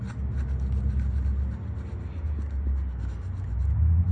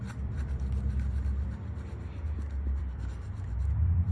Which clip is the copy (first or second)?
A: second